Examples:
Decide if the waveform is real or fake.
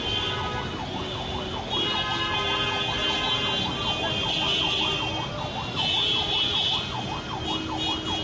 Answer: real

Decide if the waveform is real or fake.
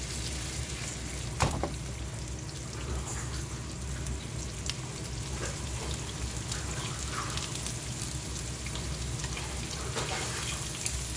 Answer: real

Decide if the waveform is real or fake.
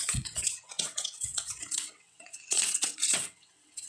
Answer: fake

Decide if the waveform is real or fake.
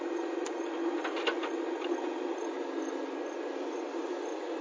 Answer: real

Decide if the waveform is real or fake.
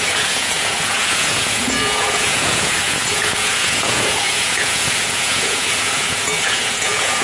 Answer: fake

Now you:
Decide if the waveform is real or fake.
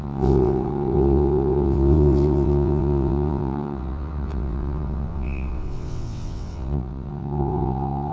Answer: fake